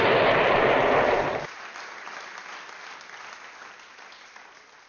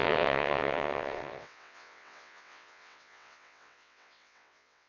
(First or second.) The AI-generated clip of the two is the second